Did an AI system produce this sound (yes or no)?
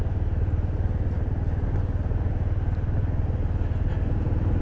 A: no